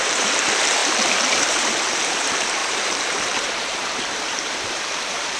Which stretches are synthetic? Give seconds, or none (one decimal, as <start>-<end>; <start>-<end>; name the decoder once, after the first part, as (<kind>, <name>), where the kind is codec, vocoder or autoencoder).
0.0-5.4 (vocoder, BigVGAN v2)